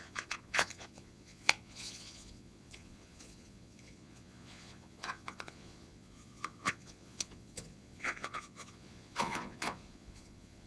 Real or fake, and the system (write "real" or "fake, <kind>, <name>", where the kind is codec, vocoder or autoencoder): fake, vocoder, Vocos